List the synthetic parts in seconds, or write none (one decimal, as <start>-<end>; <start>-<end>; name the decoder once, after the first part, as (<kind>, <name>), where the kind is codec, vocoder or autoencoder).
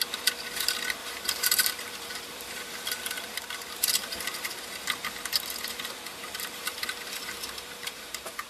1.0-4.5 (vocoder, BigVGAN v2); 6.1-8.5